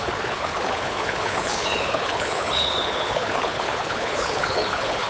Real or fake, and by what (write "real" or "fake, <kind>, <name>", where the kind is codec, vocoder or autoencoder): fake, codec, HILCodec